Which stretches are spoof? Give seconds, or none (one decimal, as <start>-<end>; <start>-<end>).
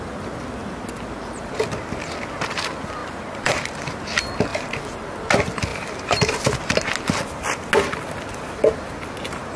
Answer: 3.0-3.7; 4.5-5.1; 5.7-6.3